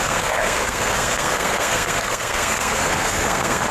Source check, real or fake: fake